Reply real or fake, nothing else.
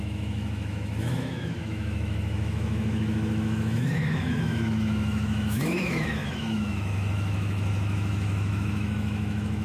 fake